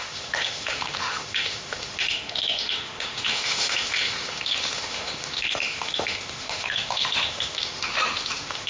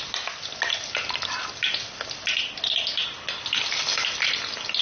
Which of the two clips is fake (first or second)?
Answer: first